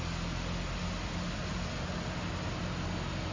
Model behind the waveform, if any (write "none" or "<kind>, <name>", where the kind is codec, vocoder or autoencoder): none